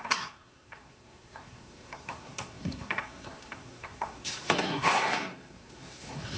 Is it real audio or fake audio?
fake